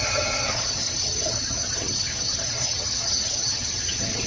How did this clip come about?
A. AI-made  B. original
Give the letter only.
A